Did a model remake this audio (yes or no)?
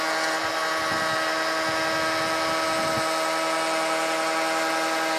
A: no